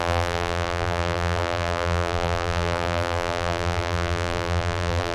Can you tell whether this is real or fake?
fake